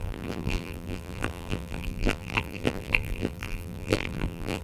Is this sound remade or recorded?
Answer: remade